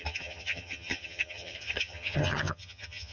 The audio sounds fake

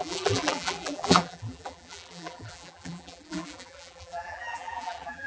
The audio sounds fake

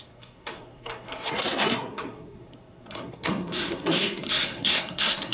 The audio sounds fake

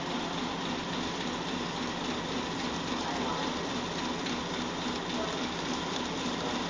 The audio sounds real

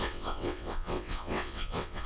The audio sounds fake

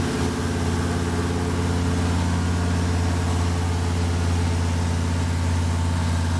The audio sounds real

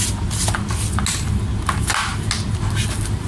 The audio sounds real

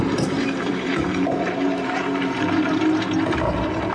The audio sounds fake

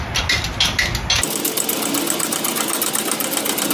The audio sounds real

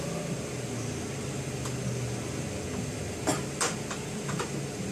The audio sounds real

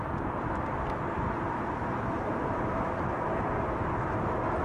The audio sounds real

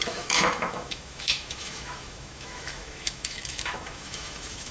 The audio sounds fake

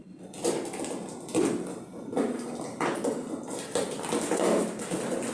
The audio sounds real